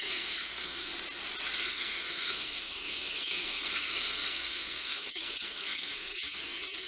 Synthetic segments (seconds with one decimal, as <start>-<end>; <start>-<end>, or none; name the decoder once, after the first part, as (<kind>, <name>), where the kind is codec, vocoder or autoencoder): 0.0-0.9 (codec, SNAC); 1.6-6.9